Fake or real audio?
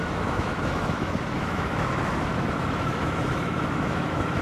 fake